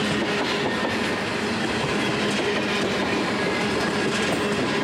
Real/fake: real